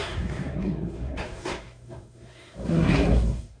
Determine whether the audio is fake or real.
fake